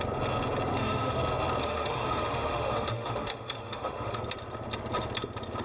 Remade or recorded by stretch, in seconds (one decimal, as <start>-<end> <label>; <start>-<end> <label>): 0.0-0.7 recorded; 0.7-1.2 remade; 1.2-1.6 recorded; 1.6-4.2 remade; 4.2-5.6 recorded